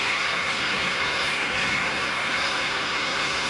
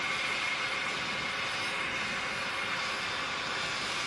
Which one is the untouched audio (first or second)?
second